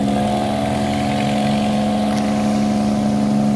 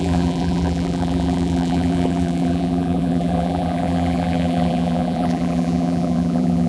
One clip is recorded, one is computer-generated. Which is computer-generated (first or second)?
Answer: second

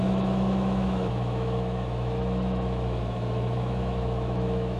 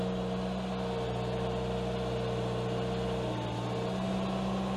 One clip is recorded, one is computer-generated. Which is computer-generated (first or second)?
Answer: first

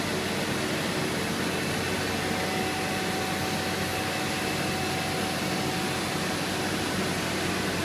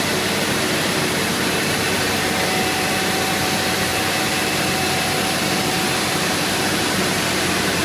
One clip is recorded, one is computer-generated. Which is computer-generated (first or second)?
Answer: second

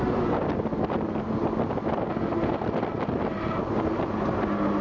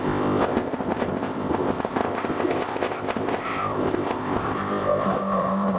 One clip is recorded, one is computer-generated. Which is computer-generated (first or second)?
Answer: second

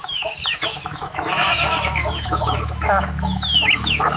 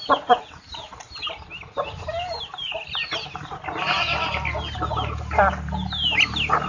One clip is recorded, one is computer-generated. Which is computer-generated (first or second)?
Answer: first